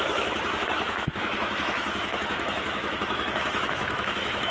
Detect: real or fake fake